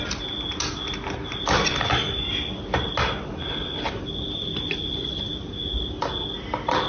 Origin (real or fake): real